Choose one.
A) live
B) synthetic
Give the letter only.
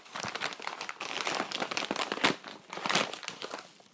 A